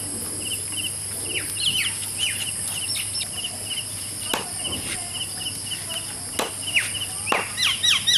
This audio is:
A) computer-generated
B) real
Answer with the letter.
B